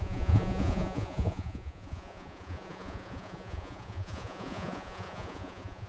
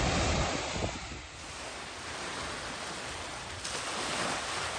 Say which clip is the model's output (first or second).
first